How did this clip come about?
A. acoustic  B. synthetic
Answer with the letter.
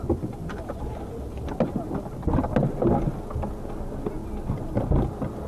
A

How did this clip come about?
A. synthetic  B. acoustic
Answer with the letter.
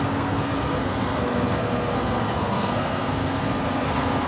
A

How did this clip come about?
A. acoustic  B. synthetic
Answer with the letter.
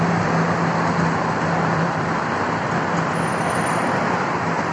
B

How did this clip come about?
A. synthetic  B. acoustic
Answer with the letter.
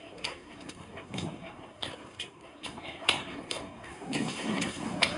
A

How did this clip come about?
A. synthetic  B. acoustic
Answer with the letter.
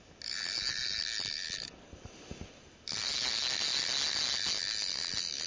B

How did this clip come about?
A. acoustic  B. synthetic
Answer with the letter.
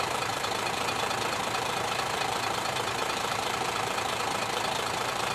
B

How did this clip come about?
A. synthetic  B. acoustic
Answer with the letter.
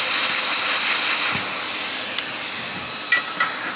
B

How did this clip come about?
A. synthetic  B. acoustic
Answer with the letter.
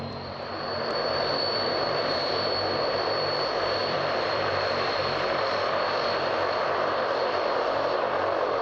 A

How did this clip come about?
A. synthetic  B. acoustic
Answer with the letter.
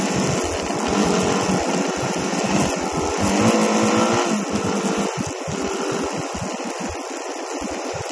B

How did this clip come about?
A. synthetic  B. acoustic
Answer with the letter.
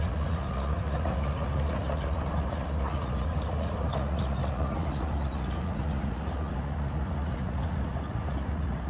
A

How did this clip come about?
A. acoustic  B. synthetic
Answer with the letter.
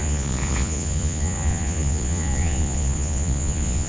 B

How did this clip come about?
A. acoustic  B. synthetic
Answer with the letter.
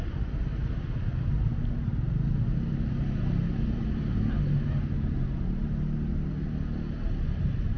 A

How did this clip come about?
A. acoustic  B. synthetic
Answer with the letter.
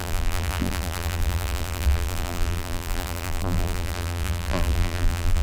B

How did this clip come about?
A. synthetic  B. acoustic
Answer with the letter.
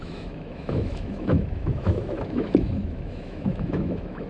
A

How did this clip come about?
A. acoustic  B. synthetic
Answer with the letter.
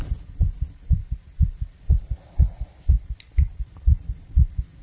A